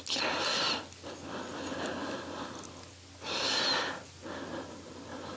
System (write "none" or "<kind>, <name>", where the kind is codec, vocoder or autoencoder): none